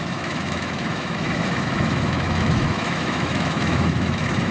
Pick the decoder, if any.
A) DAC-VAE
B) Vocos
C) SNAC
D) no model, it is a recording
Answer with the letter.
A